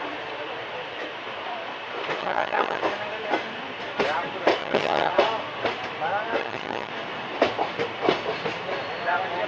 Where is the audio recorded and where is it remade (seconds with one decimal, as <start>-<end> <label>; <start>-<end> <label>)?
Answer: 0.0-2.2 recorded; 2.2-2.8 remade; 2.8-4.6 recorded; 4.6-5.1 remade; 5.1-6.4 recorded; 6.4-6.9 remade; 6.9-9.5 recorded